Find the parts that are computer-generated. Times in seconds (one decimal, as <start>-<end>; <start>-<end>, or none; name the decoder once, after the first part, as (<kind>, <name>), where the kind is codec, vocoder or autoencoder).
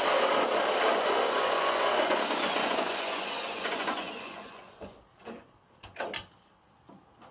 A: 0.9-5.0 (vocoder, Vocos)